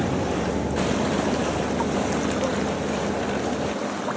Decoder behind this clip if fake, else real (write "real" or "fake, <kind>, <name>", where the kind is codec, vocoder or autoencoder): real